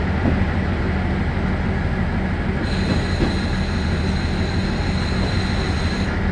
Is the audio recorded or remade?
recorded